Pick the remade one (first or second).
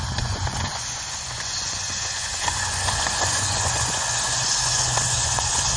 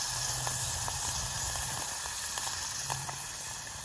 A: first